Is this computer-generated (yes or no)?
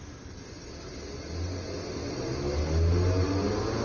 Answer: no